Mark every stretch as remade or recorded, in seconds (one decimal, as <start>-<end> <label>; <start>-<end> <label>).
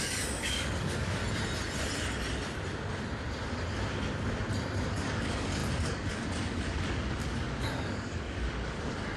0.0-1.2 remade; 1.2-4.9 recorded; 4.9-9.2 remade